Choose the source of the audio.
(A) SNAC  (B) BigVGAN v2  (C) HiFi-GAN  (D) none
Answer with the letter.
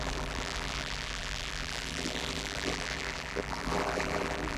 B